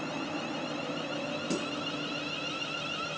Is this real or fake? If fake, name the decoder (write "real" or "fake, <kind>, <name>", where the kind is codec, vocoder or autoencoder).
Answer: real